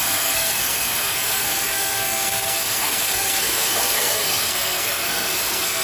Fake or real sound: fake